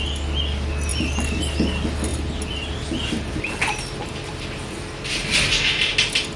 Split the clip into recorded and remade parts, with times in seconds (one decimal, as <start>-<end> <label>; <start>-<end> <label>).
0.0-0.9 recorded; 0.9-1.4 remade; 1.4-2.1 recorded; 2.1-5.0 remade; 5.0-6.4 recorded